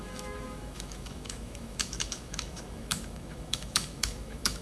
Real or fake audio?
fake